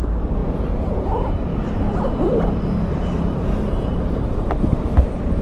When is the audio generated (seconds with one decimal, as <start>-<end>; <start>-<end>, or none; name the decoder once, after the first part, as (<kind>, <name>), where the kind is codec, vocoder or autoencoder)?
0.0-0.4 (vocoder, BigVGAN v2); 1.0-5.4